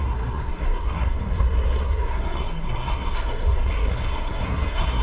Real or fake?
fake